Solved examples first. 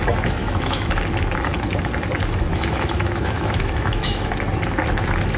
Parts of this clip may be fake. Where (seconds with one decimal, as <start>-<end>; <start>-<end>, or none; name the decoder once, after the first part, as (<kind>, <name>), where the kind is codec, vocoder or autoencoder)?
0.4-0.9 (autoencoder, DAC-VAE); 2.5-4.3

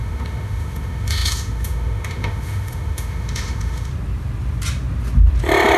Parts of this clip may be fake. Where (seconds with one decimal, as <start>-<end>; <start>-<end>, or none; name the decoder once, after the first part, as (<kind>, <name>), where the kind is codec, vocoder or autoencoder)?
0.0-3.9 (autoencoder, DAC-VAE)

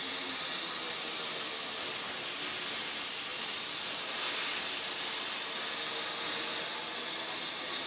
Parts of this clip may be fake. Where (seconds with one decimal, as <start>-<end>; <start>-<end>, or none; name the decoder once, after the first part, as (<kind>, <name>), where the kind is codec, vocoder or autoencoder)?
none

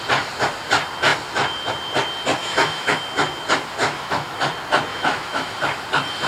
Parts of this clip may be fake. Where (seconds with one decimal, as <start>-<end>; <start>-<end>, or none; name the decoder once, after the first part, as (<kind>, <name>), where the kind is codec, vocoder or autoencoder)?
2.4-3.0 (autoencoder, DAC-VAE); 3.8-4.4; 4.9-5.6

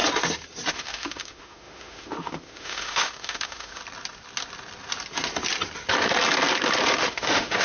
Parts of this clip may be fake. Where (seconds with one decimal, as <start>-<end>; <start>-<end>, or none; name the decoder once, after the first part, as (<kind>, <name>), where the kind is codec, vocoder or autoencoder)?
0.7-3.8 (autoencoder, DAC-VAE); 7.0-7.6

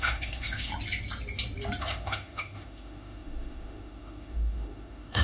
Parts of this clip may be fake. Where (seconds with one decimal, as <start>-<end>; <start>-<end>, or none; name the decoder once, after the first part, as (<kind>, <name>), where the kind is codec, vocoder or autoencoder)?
0.0-0.7 (autoencoder, DAC-VAE); 1.8-5.2

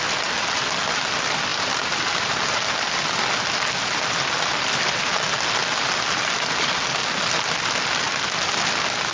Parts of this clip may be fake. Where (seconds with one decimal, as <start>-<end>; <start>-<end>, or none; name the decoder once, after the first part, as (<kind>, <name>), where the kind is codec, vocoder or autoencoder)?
none

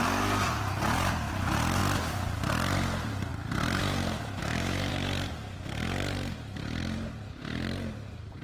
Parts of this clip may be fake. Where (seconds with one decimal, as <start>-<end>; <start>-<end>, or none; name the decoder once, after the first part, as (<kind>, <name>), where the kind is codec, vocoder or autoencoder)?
4.4-4.9 (autoencoder, DAC-VAE)